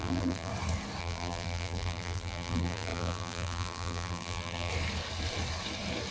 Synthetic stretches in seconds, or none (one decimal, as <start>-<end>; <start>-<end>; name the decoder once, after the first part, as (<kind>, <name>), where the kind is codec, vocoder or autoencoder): 0.0-0.5 (vocoder, BigVGAN v2); 1.0-4.7